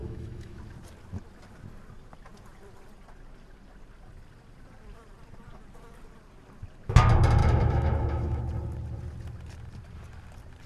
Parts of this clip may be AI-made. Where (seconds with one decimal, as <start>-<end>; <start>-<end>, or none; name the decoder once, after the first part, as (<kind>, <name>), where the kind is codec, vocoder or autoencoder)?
0.0-0.6 (autoencoder, DAC-VAE); 7.4-8.4